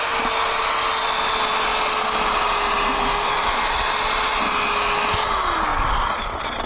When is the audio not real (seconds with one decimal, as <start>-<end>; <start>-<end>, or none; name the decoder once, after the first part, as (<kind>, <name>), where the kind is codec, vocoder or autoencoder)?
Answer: 5.7-6.3 (vocoder, BigVGAN v2)